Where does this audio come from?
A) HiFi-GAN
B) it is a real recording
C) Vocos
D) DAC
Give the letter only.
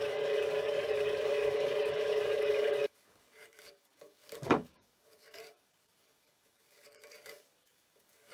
D